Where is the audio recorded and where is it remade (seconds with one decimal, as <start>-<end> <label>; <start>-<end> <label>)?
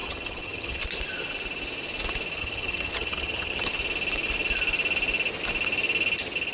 0.0-0.8 remade; 0.8-2.4 recorded; 2.4-3.7 remade; 3.7-6.5 recorded